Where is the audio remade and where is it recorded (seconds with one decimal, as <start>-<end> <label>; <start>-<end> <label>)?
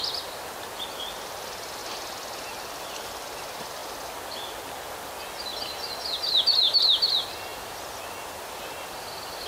0.0-7.5 recorded; 7.5-8.0 remade; 8.0-9.5 recorded